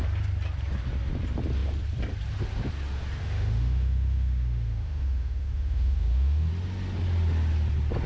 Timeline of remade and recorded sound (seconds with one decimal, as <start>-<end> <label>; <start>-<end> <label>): 0.0-3.2 recorded; 3.2-6.5 remade; 6.5-8.1 recorded